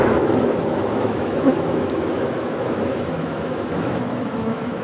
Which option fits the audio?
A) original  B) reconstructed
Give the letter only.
B